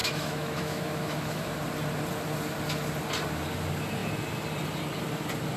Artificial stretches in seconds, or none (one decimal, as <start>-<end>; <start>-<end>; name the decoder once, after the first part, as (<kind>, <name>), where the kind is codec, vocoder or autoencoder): 0.0-1.5 (autoencoder, DAC-VAE)